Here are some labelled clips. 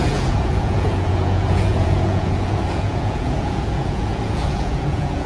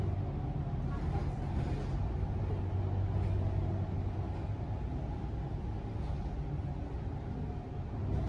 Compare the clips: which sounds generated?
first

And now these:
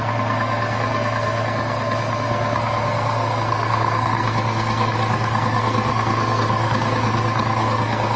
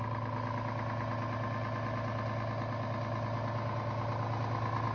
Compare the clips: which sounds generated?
first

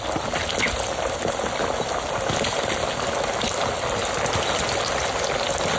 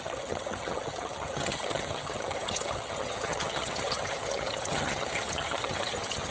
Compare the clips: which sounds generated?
second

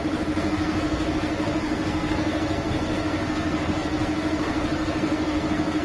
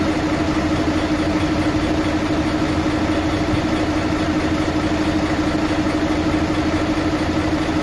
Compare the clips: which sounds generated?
first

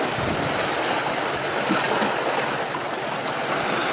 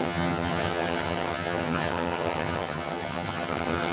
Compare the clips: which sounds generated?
second